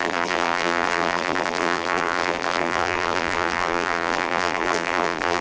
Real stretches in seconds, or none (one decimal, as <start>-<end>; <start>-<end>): none